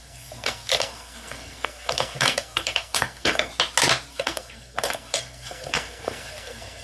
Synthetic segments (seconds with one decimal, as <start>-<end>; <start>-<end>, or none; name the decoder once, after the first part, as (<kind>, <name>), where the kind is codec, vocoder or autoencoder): 0.0-3.5 (codec, SNAC); 4.1-6.8